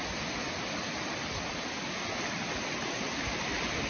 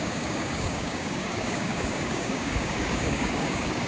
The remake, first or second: second